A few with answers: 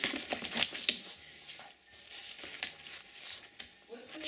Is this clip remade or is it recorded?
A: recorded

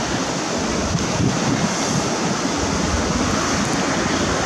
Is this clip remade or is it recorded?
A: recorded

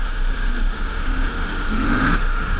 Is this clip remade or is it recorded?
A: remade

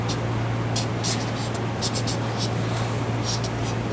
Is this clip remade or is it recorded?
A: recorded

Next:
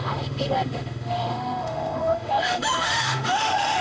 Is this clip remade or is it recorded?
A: remade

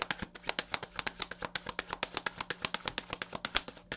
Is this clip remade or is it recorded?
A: recorded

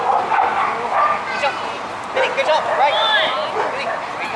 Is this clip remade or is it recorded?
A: recorded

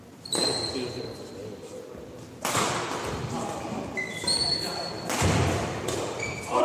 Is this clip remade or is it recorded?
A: recorded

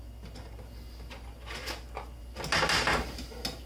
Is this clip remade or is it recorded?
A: recorded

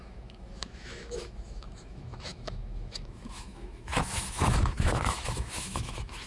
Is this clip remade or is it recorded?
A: remade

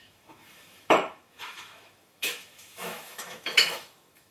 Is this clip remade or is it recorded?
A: remade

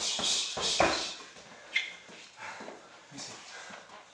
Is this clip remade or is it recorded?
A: recorded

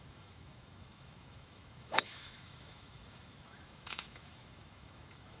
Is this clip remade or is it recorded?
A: remade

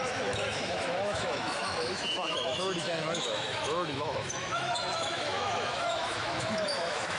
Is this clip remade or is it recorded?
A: remade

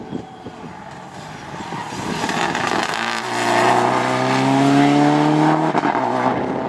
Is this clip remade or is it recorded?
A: recorded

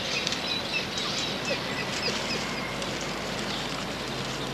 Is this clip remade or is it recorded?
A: recorded